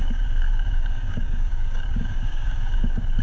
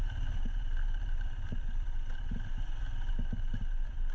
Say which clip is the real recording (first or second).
second